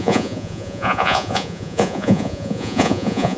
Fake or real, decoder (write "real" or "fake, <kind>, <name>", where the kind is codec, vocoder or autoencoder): fake, vocoder, Vocos